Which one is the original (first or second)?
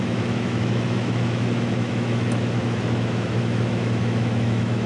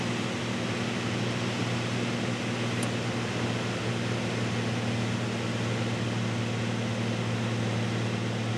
second